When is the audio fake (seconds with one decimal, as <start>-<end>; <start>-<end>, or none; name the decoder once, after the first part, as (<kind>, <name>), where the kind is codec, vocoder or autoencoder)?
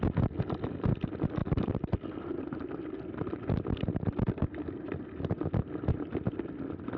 none